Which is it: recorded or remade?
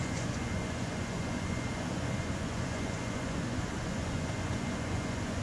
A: remade